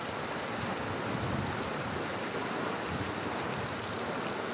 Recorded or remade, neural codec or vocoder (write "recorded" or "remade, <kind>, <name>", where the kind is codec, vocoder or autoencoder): recorded